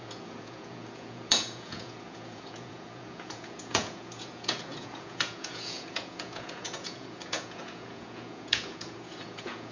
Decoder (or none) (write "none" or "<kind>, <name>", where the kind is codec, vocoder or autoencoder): vocoder, Vocos